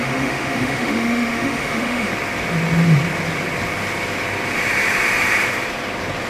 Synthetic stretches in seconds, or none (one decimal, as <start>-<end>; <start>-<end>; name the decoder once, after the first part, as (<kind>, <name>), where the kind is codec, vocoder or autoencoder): 0.0-2.1 (autoencoder, DAC-VAE)